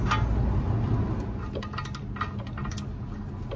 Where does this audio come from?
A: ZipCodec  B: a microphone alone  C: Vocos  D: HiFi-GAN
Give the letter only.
B